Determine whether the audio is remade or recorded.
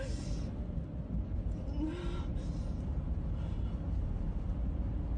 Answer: recorded